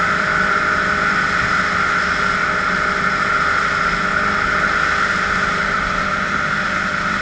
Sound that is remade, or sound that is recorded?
recorded